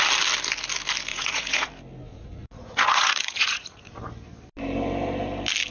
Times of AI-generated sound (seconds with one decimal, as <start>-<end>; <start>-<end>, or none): 1.1-1.7; 2.1-4.0